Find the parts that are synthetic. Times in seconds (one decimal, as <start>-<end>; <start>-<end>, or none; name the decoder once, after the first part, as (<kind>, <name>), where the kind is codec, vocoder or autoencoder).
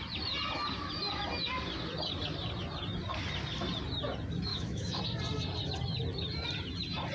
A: 4.5-5.0 (autoencoder, DAC-VAE)